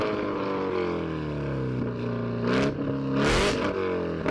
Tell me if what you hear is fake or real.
real